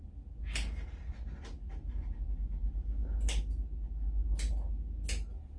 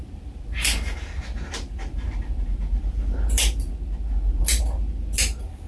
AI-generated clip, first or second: second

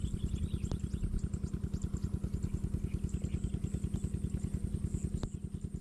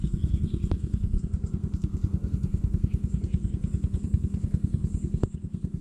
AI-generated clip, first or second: second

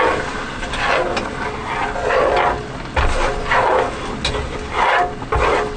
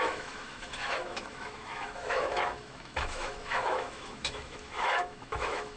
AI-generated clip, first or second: second